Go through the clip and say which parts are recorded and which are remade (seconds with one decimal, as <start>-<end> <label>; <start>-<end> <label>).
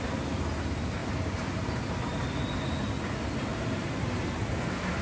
0.0-3.5 recorded; 3.5-5.0 remade